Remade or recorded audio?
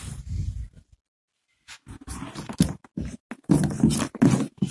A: recorded